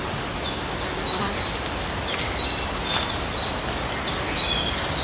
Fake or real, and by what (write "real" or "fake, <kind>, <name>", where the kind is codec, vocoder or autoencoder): real